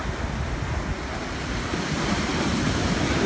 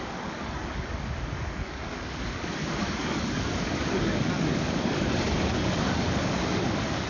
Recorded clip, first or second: first